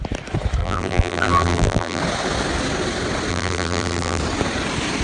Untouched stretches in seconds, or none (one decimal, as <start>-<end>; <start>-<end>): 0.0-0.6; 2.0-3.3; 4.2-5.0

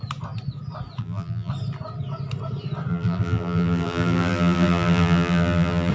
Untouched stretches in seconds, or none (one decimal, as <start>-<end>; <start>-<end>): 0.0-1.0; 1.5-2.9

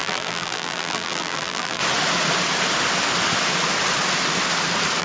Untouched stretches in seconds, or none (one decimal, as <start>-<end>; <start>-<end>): 1.8-5.0

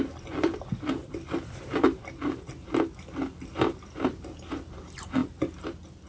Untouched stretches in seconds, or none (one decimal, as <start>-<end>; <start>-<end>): 0.0-1.0; 2.5-6.1

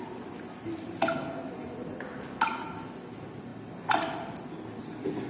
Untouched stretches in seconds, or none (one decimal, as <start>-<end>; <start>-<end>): 0.0-5.3

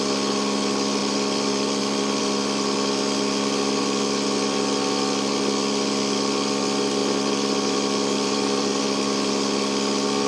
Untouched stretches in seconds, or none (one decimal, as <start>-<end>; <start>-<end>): 0.0-1.0; 2.2-7.0; 8.8-10.3

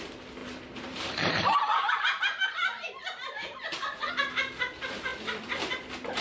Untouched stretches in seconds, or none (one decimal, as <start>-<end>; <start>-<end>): 0.0-0.4; 4.1-6.2